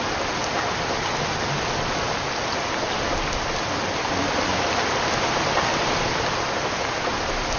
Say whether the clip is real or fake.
real